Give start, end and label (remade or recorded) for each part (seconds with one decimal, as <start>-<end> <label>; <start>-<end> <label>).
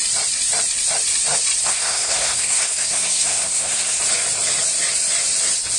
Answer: 0.0-1.6 recorded; 1.6-4.0 remade; 4.0-5.8 recorded